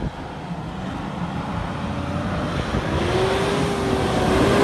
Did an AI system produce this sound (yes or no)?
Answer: no